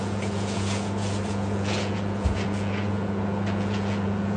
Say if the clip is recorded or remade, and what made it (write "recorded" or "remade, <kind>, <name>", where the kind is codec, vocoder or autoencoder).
remade, vocoder, Vocos